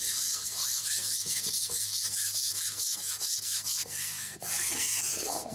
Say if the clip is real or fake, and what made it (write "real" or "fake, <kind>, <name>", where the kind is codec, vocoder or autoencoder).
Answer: fake, codec, SNAC